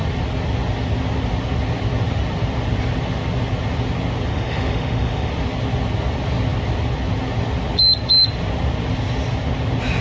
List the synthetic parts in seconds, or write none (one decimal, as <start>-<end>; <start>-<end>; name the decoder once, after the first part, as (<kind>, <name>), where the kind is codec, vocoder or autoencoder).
4.3-5.3 (autoencoder, DAC-VAE)